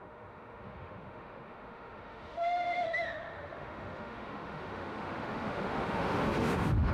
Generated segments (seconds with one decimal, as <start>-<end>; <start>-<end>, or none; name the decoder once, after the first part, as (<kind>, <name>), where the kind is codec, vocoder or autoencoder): 0.0-6.9 (autoencoder, DAC-VAE)